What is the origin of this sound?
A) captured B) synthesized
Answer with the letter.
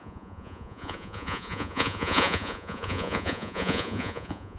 B